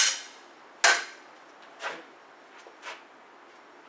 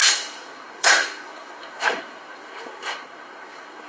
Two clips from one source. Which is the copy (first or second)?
second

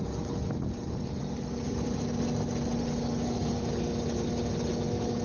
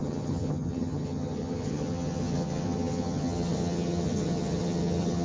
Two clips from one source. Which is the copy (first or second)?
second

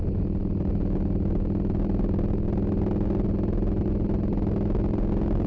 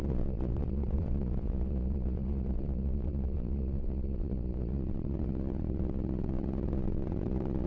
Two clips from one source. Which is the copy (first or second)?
second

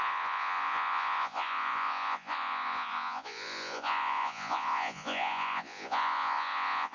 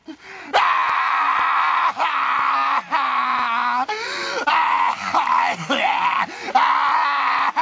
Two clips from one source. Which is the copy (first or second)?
first